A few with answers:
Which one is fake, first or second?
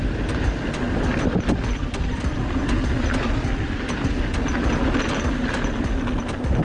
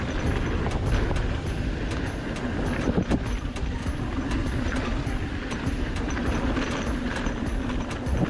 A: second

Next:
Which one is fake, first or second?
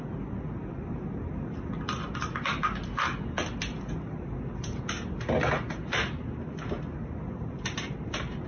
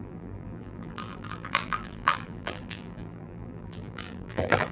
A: second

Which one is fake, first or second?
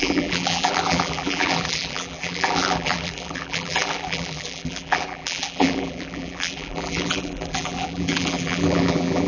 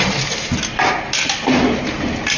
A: first